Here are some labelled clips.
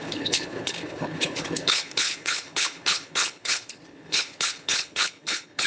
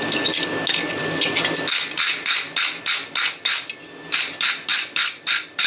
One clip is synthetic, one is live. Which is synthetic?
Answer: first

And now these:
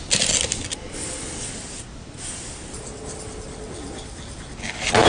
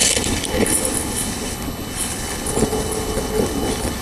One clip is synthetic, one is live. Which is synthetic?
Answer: second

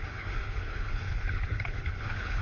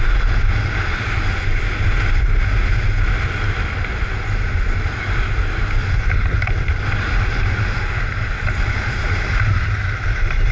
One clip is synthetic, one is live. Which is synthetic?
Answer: first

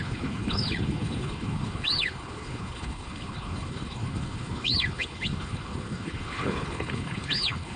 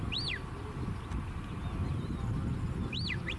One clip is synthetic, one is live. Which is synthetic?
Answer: first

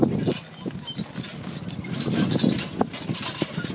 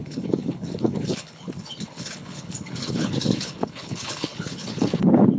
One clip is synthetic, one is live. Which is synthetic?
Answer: second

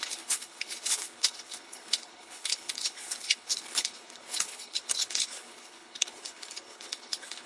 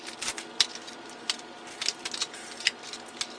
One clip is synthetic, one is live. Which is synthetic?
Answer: first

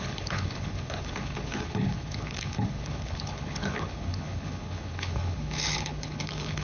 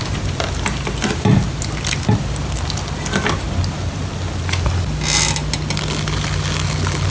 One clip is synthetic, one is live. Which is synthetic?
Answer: first